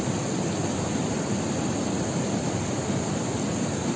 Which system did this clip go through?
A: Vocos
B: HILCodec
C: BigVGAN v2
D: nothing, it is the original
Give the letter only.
D